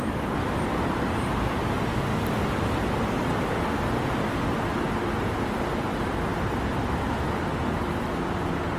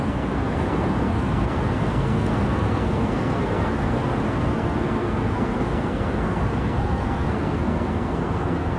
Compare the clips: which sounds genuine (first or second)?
first